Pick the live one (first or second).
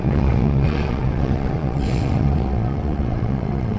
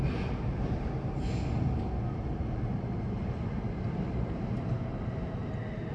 second